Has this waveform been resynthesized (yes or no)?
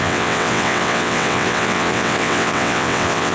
yes